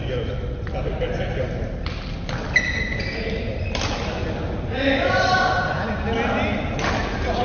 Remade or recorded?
recorded